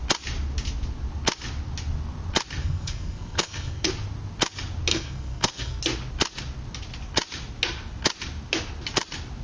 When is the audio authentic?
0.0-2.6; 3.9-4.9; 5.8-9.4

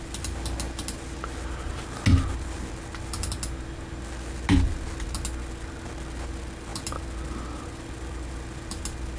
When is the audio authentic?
0.0-9.2

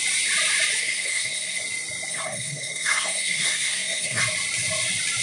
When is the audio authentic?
0.0-0.8; 1.6-2.1; 4.2-5.2